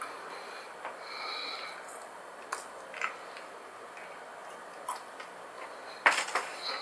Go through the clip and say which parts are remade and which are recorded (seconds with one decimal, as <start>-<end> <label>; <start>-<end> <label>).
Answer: 0.0-6.8 recorded